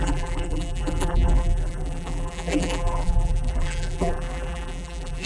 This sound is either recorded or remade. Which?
remade